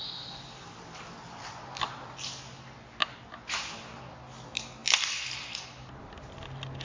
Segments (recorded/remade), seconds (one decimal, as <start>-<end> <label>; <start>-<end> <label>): 0.0-6.8 recorded